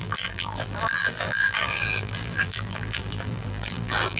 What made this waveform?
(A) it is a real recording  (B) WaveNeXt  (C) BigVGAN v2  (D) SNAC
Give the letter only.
C